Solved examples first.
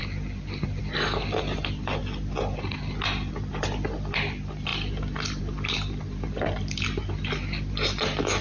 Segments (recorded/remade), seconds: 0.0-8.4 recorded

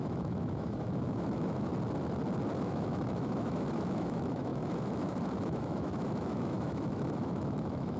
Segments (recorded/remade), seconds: 0.0-1.7 remade; 1.7-2.6 recorded; 2.6-8.0 remade